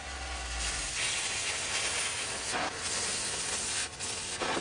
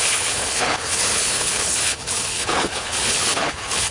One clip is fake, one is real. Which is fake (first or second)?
second